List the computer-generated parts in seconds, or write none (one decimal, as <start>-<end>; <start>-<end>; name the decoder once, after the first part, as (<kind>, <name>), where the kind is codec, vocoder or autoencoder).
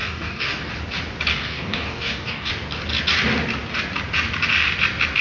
0.0-0.7 (codec, DAC); 1.3-2.5